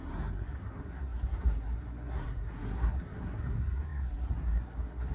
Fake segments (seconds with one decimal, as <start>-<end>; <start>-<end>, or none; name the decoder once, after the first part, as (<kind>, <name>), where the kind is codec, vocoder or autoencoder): 0.0-5.1 (codec, SNAC)